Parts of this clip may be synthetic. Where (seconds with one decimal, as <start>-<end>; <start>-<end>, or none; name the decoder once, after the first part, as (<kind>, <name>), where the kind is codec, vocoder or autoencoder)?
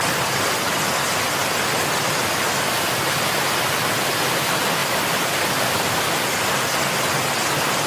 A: 1.4-2.5 (vocoder, BigVGAN v2); 4.8-6.2